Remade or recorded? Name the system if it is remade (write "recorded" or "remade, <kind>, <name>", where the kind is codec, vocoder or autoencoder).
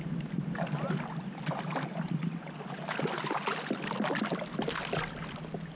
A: recorded